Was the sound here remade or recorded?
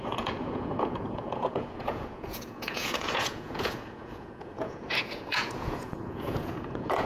remade